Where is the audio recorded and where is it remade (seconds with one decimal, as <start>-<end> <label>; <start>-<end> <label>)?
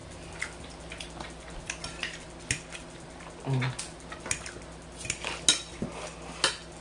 0.0-6.8 recorded